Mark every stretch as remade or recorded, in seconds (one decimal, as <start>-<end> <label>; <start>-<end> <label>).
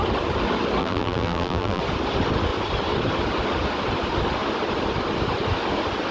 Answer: 0.0-0.8 recorded; 0.8-1.8 remade; 1.8-6.1 recorded